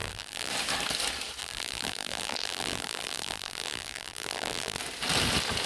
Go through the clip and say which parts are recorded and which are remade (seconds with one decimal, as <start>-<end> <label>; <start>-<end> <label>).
0.0-0.5 remade; 0.5-1.4 recorded; 1.4-4.8 remade; 4.8-5.7 recorded